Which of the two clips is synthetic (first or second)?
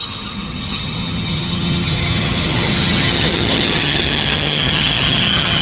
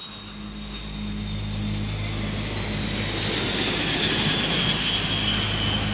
first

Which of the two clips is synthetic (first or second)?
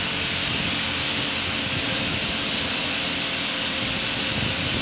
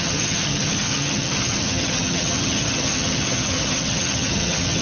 second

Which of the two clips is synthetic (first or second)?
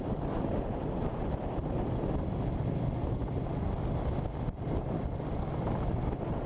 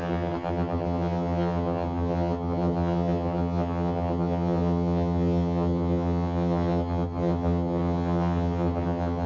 second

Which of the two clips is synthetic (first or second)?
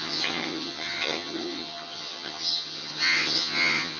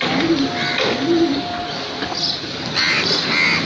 first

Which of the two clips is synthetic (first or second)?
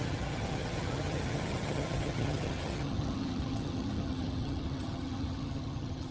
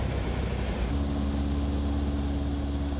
first